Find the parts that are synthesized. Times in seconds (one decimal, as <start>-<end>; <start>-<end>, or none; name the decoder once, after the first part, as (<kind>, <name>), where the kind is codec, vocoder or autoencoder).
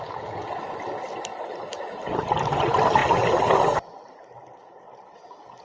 1.3-1.9 (vocoder, BigVGAN v2)